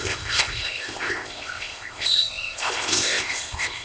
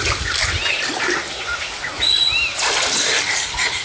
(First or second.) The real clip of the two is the second